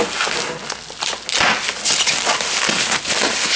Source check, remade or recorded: recorded